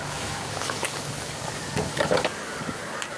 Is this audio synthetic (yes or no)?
yes